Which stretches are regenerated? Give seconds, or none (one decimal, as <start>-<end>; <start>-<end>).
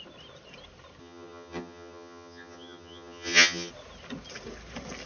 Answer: 1.0-3.7